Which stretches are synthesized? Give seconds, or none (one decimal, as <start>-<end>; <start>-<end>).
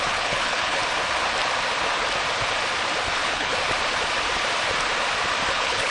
0.0-0.8; 3.1-3.5; 5.5-5.9